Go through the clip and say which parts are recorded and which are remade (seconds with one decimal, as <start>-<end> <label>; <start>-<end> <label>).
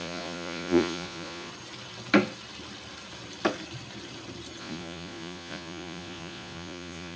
0.0-1.5 remade; 1.5-4.6 recorded; 4.6-7.2 remade